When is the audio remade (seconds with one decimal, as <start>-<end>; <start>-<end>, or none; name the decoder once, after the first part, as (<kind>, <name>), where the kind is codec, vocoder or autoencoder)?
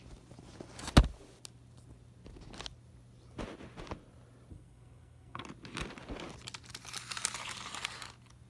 4.5-5.4 (codec, SNAC)